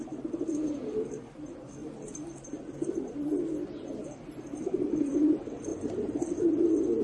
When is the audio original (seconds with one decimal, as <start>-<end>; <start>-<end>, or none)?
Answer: 0.0-7.0